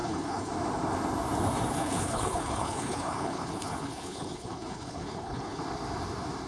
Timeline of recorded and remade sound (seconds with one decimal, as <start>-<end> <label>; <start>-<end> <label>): 0.0-0.5 remade; 0.5-1.7 recorded; 1.7-5.6 remade; 5.6-6.5 recorded